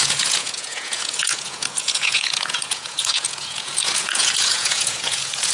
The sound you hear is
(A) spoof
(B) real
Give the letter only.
A